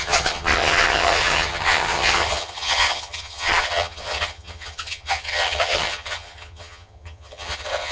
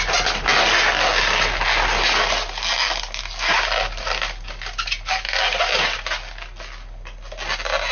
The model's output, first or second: first